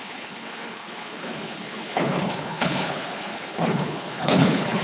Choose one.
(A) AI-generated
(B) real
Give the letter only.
A